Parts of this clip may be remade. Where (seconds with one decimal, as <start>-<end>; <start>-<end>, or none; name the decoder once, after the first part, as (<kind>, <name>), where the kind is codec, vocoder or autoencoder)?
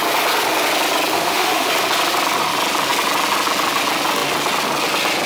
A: 1.1-1.7 (autoencoder, DAC-VAE)